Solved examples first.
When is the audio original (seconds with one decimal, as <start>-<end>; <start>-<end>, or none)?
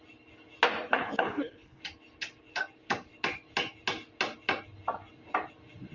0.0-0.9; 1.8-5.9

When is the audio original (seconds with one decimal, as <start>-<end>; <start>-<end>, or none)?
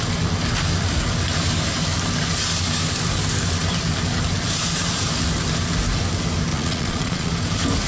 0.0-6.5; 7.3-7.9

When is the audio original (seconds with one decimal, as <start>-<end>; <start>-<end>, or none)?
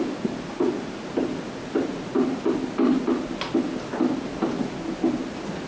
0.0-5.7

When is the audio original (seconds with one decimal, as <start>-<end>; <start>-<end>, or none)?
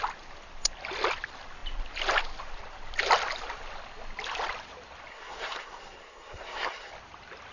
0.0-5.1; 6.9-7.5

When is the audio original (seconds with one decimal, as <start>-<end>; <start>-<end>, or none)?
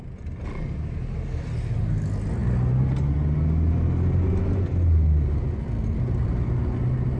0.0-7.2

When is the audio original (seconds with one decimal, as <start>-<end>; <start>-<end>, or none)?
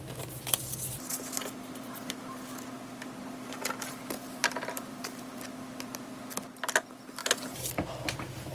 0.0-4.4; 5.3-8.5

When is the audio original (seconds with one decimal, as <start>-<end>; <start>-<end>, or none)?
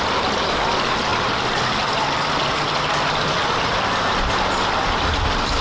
0.0-5.6